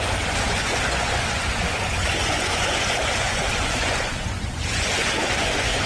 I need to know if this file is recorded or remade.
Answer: remade